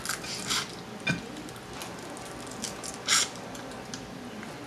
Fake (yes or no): no